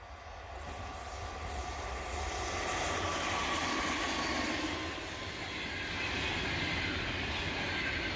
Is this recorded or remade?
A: recorded